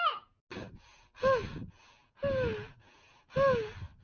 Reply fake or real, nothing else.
real